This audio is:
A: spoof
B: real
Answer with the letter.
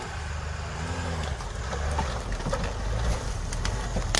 B